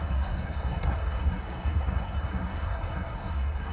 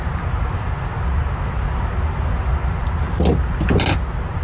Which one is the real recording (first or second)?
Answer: second